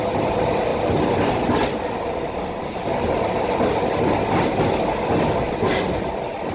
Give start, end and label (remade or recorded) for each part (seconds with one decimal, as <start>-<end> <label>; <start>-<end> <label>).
0.0-6.5 recorded